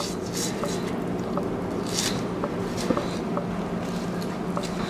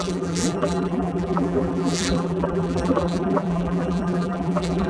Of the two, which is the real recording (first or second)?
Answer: first